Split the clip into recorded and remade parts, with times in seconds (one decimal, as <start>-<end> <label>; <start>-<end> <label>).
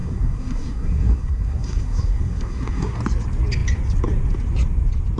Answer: 0.0-3.0 remade; 3.0-5.2 recorded